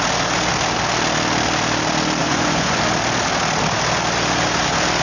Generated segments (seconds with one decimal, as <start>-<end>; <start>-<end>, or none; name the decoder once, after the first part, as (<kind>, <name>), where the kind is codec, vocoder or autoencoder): 2.2-2.8 (vocoder, Vocos)

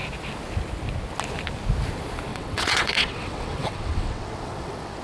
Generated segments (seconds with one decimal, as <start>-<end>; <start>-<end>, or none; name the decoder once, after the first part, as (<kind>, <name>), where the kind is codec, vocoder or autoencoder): 2.3-5.0 (vocoder, WaveNeXt)

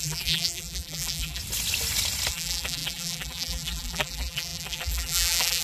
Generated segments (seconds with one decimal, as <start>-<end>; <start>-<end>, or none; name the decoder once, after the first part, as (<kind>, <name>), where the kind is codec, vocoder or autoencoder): 0.0-1.4 (vocoder, BigVGAN v2); 2.3-5.6

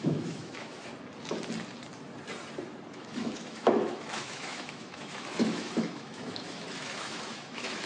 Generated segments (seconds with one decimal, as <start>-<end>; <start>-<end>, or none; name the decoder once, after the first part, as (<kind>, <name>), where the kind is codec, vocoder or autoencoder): 0.0-0.9 (autoencoder, DAC-VAE); 2.9-7.9

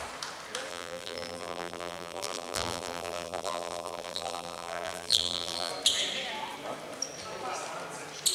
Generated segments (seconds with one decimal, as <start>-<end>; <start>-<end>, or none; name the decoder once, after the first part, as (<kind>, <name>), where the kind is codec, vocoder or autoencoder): 0.7-5.7 (vocoder, BigVGAN v2)